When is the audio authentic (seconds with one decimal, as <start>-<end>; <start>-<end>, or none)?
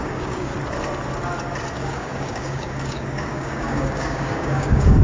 0.5-1.7